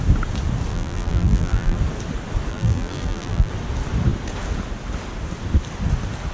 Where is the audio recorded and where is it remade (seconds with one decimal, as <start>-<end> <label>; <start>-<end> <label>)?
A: 0.0-0.7 recorded; 0.7-1.8 remade; 1.8-2.5 recorded; 2.5-3.5 remade; 3.5-6.3 recorded